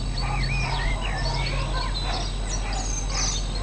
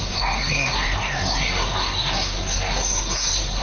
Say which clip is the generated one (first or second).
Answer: second